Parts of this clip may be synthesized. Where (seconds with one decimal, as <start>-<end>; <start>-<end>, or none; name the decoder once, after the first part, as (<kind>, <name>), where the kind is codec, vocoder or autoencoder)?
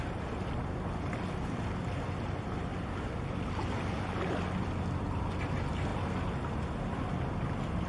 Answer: none